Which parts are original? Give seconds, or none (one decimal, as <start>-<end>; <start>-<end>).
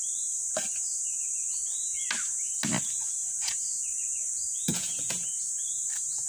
0.0-3.2; 3.8-4.7; 5.4-6.3